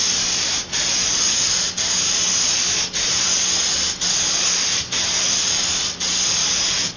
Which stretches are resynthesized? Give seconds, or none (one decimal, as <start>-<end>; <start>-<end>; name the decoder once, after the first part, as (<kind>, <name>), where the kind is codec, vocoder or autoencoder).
none